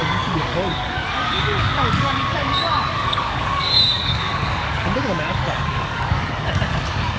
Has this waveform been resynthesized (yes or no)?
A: yes